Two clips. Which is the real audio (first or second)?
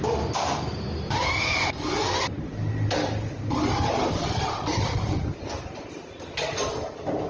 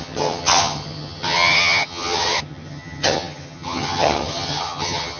first